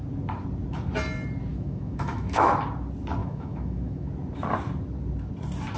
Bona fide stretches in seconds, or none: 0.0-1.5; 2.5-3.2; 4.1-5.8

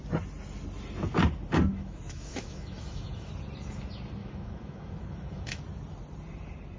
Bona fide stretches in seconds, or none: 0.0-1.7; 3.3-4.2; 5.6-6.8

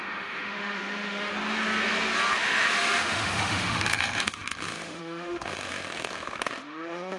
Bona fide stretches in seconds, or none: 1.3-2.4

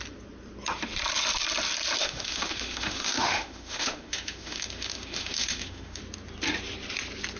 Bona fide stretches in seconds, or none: 0.0-2.0; 6.0-7.4

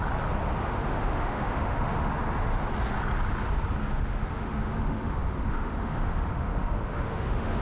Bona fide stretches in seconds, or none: 0.0-0.6; 2.1-3.8

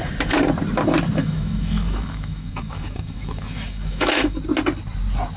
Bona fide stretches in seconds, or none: 0.0-1.2; 4.4-5.4

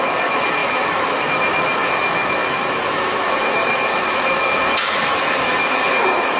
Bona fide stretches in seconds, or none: none

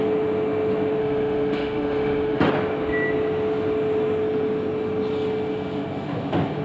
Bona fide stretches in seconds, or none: 0.0-1.0; 2.5-6.6